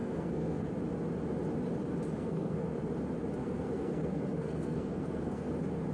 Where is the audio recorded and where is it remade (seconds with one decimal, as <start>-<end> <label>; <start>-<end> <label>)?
0.0-0.7 remade; 0.7-2.2 recorded; 2.2-2.7 remade; 2.7-3.4 recorded; 3.4-5.5 remade; 5.5-5.9 recorded